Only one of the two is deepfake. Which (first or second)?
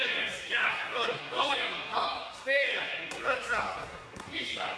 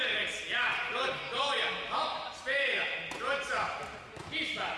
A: first